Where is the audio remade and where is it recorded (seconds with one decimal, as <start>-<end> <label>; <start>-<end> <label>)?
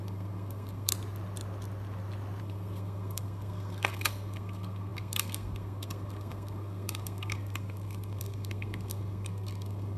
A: 0.0-0.9 remade; 0.9-2.4 recorded; 2.4-10.0 remade